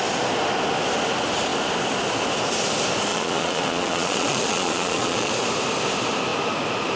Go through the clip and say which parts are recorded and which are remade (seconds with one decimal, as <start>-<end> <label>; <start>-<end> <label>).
0.0-3.1 recorded; 3.1-5.3 remade; 5.3-7.0 recorded